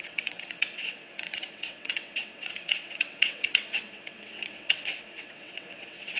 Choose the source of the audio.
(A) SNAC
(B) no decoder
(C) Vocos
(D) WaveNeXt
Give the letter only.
D